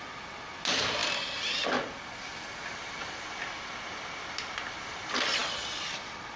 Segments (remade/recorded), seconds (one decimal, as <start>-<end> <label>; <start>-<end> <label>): 0.0-6.4 recorded